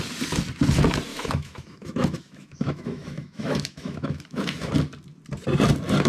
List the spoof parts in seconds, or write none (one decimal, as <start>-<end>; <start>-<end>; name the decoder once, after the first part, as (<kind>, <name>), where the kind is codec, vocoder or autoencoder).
1.1-4.7 (autoencoder, DAC-VAE)

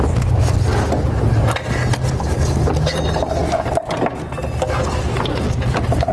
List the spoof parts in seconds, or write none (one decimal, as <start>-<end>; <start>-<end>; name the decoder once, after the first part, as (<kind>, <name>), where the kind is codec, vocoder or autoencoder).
none

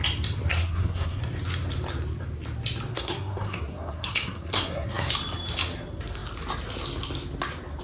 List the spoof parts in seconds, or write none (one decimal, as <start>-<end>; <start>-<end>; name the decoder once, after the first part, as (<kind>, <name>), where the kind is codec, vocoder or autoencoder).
0.5-1.2 (codec, SNAC); 2.9-5.1

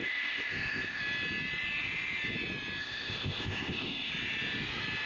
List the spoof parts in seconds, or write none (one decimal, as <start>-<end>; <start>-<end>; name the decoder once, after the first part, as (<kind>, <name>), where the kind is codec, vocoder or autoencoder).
0.0-1.0 (codec, ZipCodec); 2.8-4.1

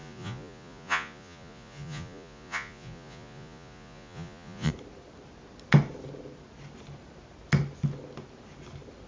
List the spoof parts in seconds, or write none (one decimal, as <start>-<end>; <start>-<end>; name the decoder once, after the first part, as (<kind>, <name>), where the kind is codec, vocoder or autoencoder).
0.0-4.7 (vocoder, Vocos)

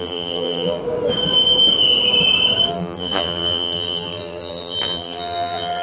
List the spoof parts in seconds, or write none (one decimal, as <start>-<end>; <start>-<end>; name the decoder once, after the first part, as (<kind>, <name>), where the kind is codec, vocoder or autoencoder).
0.0-0.8 (vocoder, BigVGAN v2); 2.7-5.8

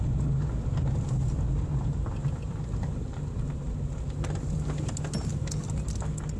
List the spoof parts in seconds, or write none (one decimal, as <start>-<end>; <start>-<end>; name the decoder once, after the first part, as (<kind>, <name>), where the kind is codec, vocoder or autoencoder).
none

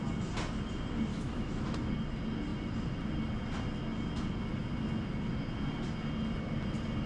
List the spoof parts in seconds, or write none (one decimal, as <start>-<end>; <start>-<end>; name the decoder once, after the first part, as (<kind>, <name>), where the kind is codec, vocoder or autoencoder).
1.1-1.9 (autoencoder, DAC-VAE)